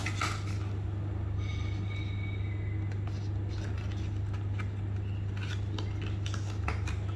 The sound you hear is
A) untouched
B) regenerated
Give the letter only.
A